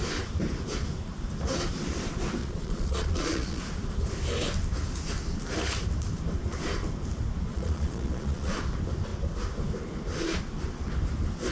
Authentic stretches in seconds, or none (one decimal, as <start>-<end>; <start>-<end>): 0.0-2.4; 3.6-7.5; 8.5-11.5

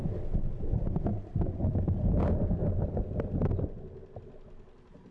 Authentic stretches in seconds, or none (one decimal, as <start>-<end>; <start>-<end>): 0.0-5.1